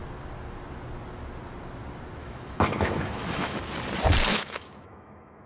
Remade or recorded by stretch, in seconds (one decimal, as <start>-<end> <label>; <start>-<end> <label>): 0.0-2.2 recorded; 2.2-3.6 remade; 3.6-4.3 recorded; 4.3-5.5 remade